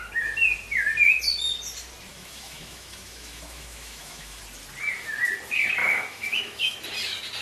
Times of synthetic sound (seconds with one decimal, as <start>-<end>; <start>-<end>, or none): 2.1-4.4; 5.8-6.8